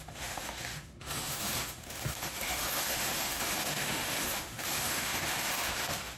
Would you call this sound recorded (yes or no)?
no